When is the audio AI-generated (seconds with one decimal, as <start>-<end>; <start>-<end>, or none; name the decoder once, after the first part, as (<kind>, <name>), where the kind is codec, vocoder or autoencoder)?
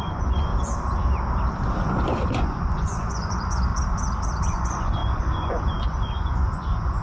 0.0-0.5 (vocoder, Vocos); 2.3-3.7; 4.4-7.0